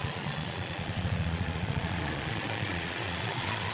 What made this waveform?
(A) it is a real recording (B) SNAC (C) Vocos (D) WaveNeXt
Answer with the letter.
C